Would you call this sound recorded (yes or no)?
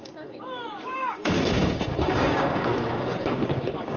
no